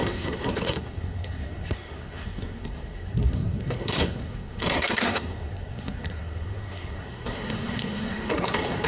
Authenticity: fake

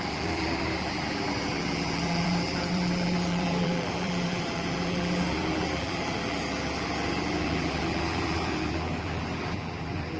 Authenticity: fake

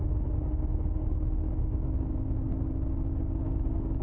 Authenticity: real